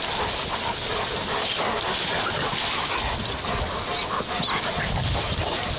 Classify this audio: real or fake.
real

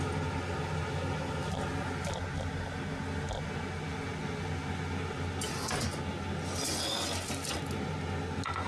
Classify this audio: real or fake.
real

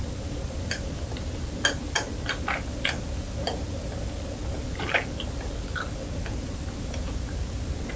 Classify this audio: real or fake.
real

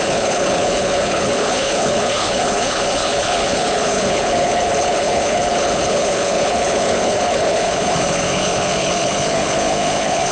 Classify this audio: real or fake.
fake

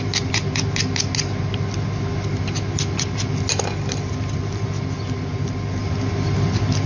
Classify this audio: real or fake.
real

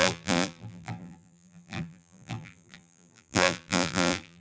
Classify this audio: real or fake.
fake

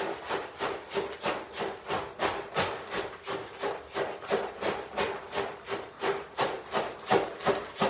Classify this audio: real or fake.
real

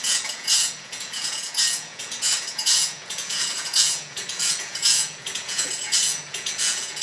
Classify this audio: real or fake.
fake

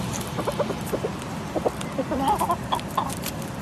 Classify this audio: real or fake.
real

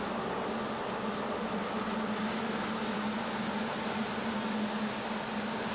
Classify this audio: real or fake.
real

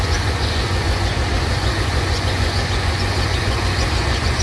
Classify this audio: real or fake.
fake